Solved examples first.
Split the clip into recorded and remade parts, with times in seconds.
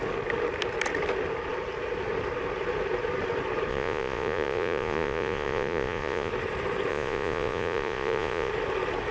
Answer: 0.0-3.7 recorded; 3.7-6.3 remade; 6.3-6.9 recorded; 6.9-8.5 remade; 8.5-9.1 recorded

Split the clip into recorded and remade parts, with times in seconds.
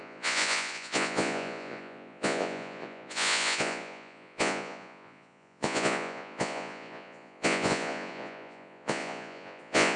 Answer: 0.0-10.0 remade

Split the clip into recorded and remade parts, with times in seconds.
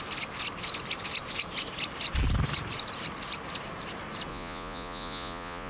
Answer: 0.0-4.3 recorded; 4.3-5.7 remade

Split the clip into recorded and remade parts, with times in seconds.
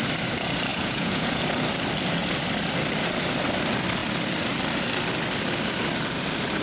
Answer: 0.0-0.7 recorded; 0.7-1.4 remade; 1.4-6.6 recorded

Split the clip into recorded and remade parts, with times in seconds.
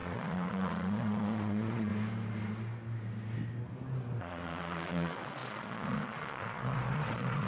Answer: 0.0-1.9 remade; 1.9-4.2 recorded; 4.2-7.5 remade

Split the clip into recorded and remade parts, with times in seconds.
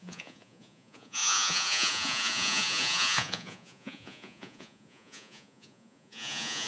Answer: 0.0-6.7 remade